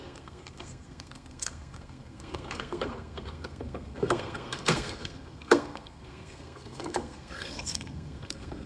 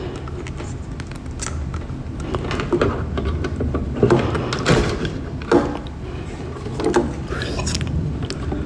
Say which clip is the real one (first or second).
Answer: second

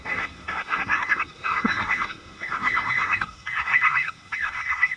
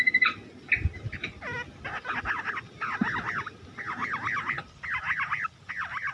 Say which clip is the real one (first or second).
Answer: second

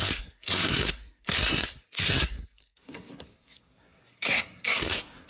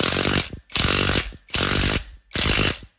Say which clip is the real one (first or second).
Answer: second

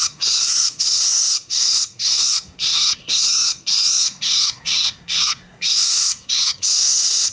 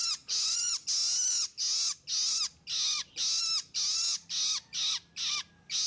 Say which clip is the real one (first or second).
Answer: second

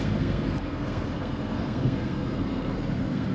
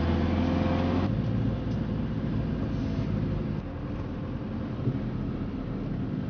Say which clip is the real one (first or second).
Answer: second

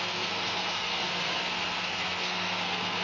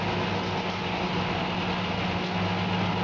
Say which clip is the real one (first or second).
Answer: second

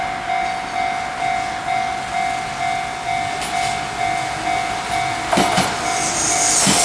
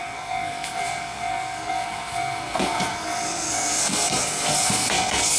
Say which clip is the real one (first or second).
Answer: first